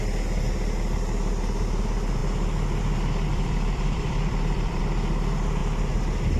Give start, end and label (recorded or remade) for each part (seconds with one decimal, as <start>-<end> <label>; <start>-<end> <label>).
0.0-3.3 recorded; 3.3-4.8 remade; 4.8-6.4 recorded